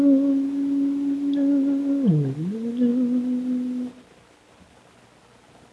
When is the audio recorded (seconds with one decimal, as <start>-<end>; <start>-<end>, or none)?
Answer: 0.0-5.7